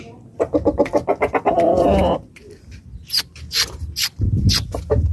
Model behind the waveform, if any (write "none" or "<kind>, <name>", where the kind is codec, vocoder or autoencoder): none